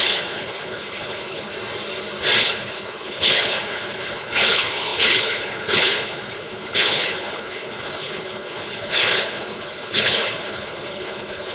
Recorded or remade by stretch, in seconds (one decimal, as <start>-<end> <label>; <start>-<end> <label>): 0.0-1.5 remade; 1.5-2.4 recorded; 2.4-11.5 remade